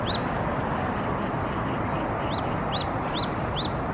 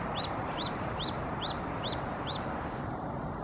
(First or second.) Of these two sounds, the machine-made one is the second